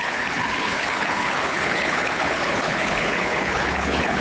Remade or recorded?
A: remade